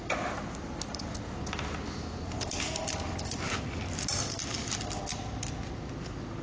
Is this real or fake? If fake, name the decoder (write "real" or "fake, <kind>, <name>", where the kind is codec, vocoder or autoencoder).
real